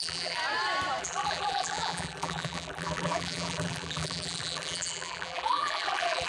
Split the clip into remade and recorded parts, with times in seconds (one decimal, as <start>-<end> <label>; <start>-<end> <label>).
0.0-0.4 remade; 0.4-1.0 recorded; 1.0-6.3 remade